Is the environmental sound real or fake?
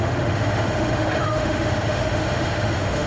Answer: fake